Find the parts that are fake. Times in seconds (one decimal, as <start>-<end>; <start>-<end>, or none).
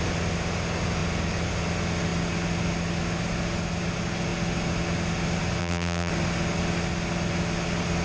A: 5.6-6.1